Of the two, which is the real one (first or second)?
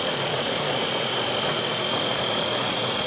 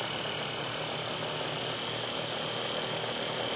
second